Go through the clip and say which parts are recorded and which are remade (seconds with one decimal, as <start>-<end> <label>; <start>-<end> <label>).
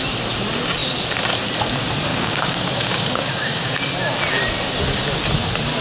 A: 0.0-2.1 recorded; 2.1-3.8 remade; 3.8-5.8 recorded